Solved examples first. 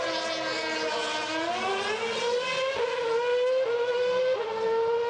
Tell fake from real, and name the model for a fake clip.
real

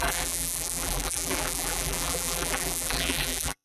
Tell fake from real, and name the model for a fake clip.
fake, vocoder, BigVGAN v2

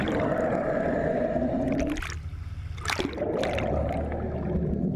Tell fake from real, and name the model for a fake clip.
real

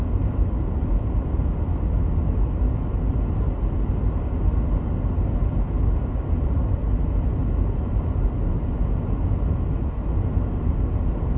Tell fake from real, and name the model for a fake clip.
real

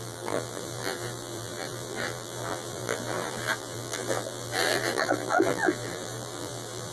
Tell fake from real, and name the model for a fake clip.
fake, vocoder, BigVGAN v2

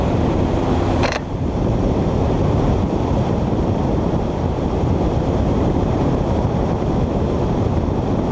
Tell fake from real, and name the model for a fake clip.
fake, vocoder, BigVGAN v2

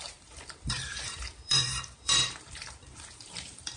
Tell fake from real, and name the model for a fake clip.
fake, vocoder, BigVGAN v2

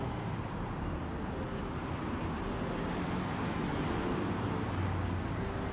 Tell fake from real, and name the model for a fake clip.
real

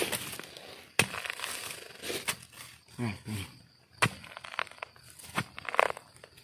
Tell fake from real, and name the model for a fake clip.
real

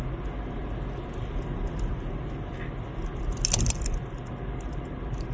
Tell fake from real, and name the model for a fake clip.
real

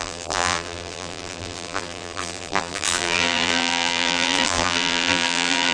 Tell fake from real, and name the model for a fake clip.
fake, vocoder, BigVGAN v2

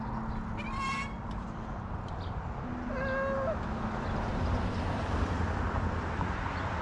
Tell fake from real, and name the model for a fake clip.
real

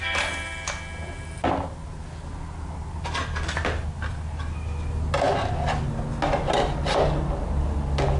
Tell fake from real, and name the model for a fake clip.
real